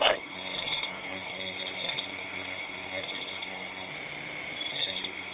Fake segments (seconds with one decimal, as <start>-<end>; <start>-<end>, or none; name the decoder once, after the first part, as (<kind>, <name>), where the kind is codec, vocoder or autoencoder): 0.0-3.9 (codec, SNAC); 4.7-5.3